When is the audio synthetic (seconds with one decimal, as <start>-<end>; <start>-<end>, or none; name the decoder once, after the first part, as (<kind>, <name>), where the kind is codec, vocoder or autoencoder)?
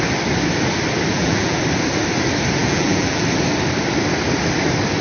1.1-1.6 (vocoder, BigVGAN v2); 2.6-3.2